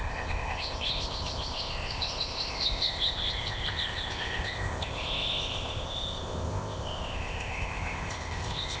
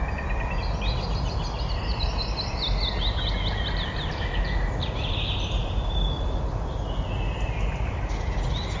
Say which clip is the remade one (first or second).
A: first